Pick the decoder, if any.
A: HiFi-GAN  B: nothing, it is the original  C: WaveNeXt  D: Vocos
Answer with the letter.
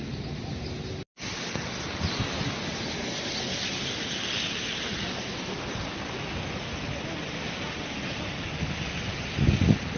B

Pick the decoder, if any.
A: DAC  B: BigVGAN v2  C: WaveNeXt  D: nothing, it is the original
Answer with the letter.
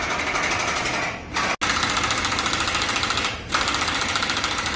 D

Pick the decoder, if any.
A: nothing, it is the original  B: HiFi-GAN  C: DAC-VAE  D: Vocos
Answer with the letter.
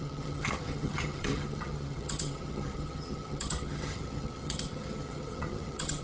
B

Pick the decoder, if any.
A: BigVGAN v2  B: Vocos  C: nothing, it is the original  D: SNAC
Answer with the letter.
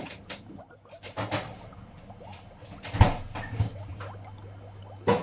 C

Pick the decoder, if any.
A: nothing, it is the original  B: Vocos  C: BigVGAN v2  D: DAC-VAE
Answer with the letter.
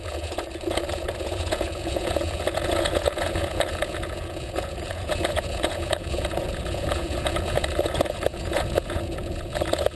B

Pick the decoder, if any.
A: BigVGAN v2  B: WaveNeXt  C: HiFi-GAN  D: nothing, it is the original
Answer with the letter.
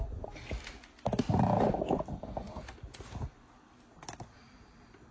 A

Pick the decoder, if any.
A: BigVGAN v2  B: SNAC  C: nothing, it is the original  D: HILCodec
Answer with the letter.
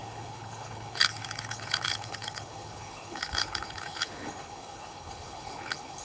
D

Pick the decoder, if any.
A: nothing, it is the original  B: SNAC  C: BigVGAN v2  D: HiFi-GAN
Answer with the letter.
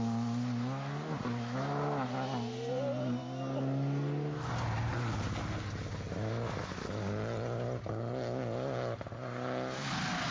A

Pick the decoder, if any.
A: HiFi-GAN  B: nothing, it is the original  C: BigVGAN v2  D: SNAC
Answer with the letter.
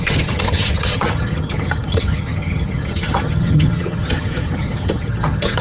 A